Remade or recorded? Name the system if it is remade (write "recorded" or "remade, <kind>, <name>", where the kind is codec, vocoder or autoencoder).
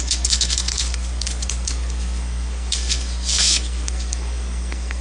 remade, codec, SNAC